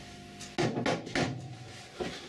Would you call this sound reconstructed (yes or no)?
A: no